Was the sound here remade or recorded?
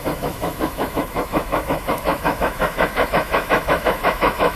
remade